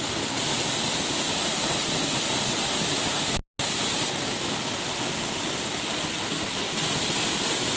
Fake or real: real